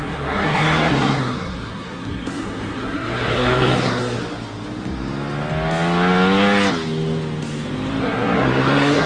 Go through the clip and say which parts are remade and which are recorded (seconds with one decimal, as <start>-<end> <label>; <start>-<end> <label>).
0.0-4.2 remade; 4.2-8.0 recorded; 8.0-9.1 remade